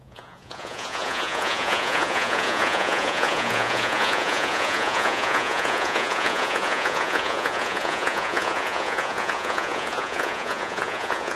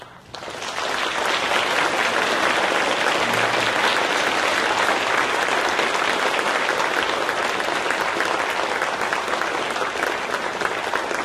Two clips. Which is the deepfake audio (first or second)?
first